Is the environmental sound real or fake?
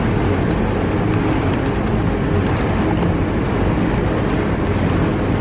real